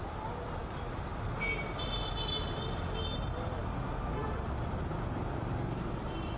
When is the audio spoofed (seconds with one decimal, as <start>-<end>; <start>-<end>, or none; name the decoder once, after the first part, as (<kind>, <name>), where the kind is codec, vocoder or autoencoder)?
none